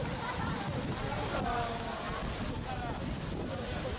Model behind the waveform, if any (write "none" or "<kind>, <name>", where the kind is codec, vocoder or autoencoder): none